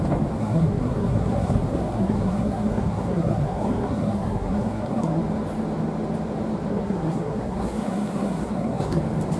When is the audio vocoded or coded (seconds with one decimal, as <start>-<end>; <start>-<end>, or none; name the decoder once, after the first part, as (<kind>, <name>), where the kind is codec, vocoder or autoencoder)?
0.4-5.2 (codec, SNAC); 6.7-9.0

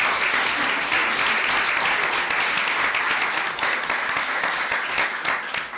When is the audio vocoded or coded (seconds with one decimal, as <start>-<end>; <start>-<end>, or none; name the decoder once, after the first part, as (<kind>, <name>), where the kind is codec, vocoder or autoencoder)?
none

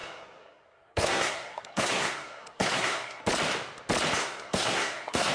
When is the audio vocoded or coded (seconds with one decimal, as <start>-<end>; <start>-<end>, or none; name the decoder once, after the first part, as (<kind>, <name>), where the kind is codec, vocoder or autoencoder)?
0.0-3.2 (codec, SNAC); 4.2-5.3